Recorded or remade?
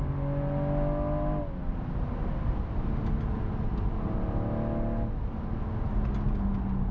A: recorded